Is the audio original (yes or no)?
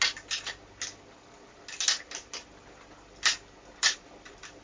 yes